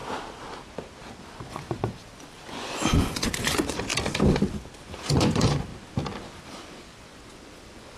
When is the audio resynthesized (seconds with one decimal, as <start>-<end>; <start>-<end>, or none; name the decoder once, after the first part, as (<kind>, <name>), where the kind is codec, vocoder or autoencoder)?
1.2-3.9 (vocoder, Vocos); 4.8-5.7; 6.5-8.0